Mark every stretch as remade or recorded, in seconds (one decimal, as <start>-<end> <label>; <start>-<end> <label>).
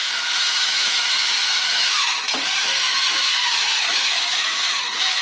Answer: 0.0-5.2 remade